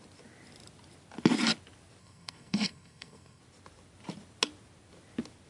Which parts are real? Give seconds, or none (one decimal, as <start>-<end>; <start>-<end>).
0.0-2.0; 3.4-5.5

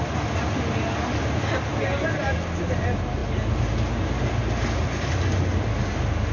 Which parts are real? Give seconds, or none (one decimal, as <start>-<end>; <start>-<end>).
0.0-6.3

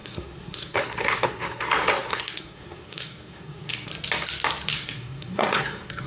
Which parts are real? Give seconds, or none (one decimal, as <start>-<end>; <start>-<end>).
3.9-4.7

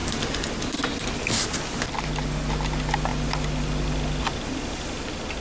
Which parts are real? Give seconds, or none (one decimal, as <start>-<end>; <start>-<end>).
0.0-5.4

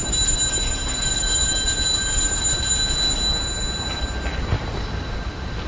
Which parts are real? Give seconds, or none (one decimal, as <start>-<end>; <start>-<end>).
0.0-5.7

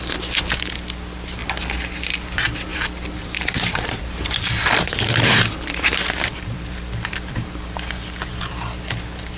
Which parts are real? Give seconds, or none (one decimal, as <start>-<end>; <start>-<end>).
0.0-1.4; 2.1-2.7; 7.6-9.4

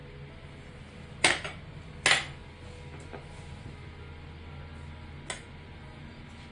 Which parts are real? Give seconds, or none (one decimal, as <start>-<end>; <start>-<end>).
0.0-6.5